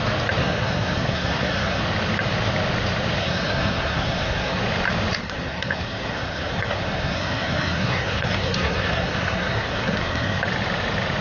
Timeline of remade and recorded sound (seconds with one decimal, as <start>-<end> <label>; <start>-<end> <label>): 0.0-0.4 recorded; 0.4-1.8 remade; 1.8-3.2 recorded; 3.2-4.6 remade; 4.6-5.2 recorded; 5.2-10.4 remade; 10.4-11.2 recorded